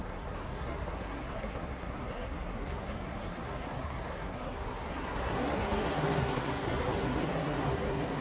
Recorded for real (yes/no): no